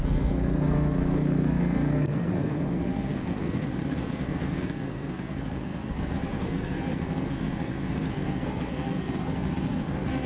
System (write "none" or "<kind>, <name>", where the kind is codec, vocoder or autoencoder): codec, SNAC